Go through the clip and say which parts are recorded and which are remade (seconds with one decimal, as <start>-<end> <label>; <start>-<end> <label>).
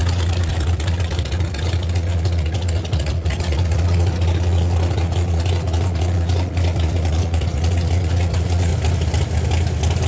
0.0-8.7 remade; 8.7-10.1 recorded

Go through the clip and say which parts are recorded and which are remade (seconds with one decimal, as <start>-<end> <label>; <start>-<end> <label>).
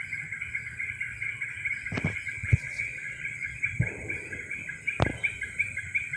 0.0-2.4 recorded; 2.4-3.6 remade; 3.6-6.2 recorded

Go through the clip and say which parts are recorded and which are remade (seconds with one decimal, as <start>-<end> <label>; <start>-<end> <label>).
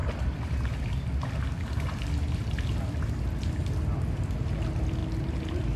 0.0-5.8 recorded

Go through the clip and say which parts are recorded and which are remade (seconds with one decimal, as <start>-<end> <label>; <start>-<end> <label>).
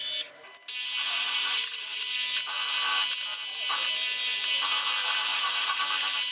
0.0-1.0 recorded; 1.0-2.0 remade; 2.0-5.3 recorded; 5.3-5.8 remade; 5.8-6.3 recorded